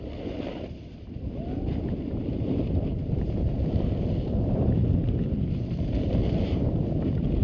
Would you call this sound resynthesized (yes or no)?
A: yes